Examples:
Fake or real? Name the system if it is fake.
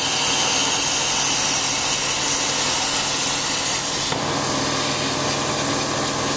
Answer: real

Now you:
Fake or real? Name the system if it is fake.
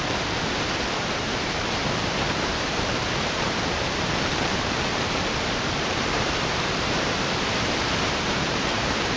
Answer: fake, vocoder, BigVGAN v2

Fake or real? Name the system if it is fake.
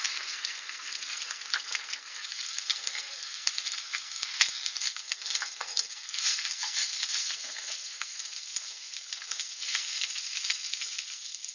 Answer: fake, codec, SNAC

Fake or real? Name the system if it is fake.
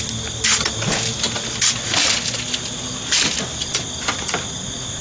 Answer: real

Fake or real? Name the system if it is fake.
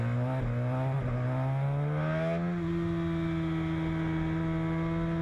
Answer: real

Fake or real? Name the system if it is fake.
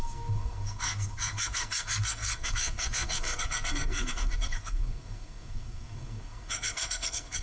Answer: fake, codec, SNAC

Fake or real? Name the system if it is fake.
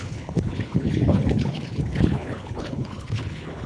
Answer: fake, codec, HILCodec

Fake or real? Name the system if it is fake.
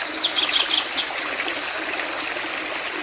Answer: real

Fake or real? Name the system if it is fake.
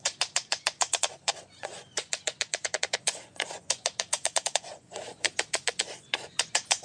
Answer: fake, vocoder, Vocos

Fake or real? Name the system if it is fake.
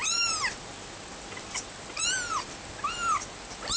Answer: real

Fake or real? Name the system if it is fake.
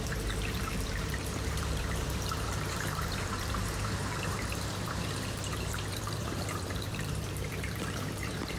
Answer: fake, vocoder, BigVGAN v2